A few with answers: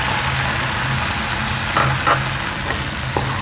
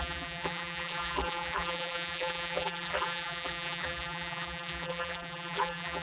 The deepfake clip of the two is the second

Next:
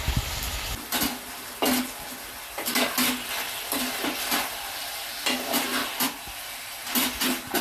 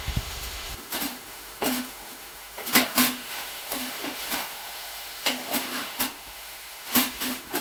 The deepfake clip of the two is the second